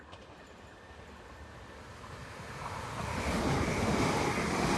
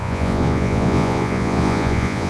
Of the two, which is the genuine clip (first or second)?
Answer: first